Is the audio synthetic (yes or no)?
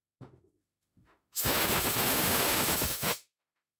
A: yes